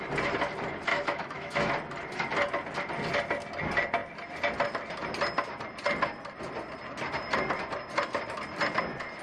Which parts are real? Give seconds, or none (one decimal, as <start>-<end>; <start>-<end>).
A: 0.0-0.9; 1.7-9.2